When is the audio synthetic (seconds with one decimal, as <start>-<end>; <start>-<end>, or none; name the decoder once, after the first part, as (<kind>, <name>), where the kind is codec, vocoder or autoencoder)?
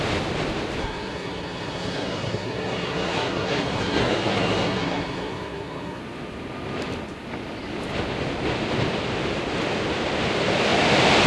0.8-6.0 (codec, SNAC)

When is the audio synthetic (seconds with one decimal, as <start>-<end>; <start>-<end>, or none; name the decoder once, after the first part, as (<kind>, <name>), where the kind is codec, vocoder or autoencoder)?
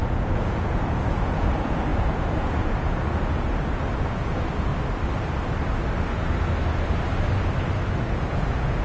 0.0-4.7 (vocoder, Vocos); 8.0-8.8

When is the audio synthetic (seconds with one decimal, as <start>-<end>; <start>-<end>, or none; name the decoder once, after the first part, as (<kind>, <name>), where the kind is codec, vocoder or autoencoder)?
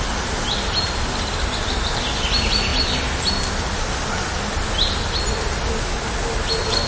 none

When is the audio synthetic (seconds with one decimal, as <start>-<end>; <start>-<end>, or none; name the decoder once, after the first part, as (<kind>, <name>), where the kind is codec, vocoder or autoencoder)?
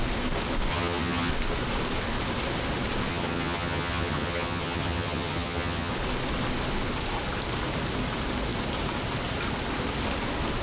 0.7-1.3 (vocoder, HiFi-GAN); 3.1-5.9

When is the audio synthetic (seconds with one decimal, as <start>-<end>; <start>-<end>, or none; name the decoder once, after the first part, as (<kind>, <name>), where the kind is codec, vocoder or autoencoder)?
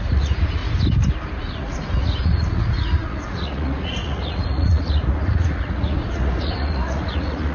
0.0-0.6 (vocoder, Vocos); 1.4-7.5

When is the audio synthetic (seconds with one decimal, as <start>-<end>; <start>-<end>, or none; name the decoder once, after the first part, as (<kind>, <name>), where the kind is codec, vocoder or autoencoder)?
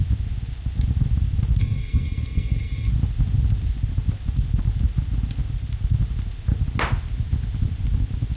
1.6-2.9 (codec, SNAC)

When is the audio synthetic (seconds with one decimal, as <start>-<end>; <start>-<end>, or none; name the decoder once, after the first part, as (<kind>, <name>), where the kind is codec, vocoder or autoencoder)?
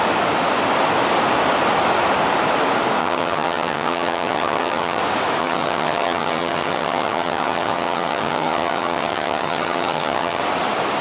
3.0-5.0 (vocoder, HiFi-GAN); 5.4-10.4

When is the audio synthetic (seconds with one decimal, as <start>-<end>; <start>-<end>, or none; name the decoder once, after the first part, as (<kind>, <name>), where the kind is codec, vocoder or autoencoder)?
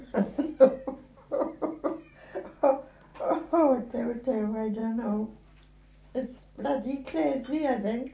0.0-0.5 (vocoder, Vocos); 3.1-4.0